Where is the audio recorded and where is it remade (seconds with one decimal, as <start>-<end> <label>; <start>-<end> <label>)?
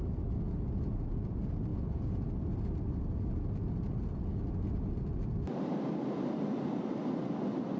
0.0-1.7 recorded; 1.7-2.3 remade; 2.3-7.8 recorded